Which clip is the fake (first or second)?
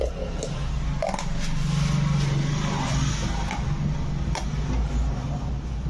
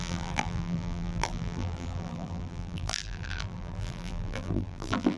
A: second